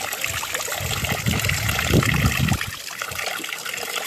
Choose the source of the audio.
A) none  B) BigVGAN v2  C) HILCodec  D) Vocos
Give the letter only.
A